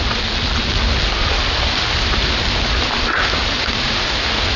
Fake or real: real